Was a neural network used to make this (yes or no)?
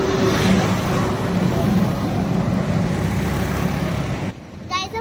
no